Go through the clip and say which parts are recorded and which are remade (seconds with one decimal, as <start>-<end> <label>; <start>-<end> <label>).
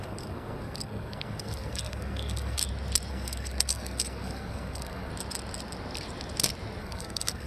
0.0-2.6 remade; 2.6-3.1 recorded; 3.1-5.1 remade; 5.1-6.8 recorded; 6.8-7.5 remade